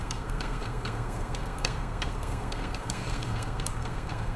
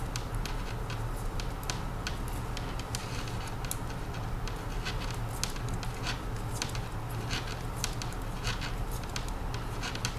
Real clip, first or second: second